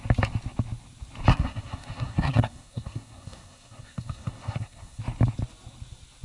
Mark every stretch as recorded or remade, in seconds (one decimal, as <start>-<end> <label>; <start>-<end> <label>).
0.0-1.3 recorded; 1.3-5.0 remade; 5.0-6.2 recorded